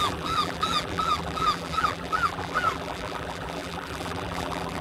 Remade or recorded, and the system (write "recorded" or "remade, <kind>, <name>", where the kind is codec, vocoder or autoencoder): remade, vocoder, BigVGAN v2